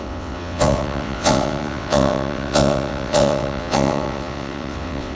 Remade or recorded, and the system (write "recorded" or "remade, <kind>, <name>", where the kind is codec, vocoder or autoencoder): remade, vocoder, WaveNeXt